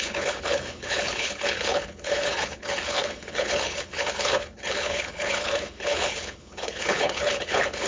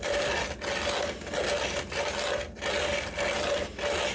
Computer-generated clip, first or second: first